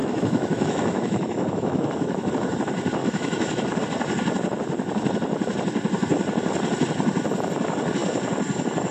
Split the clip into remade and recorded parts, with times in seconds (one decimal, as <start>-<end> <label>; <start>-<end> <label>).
0.0-2.3 remade; 2.3-3.0 recorded; 3.0-3.8 remade; 3.8-8.9 recorded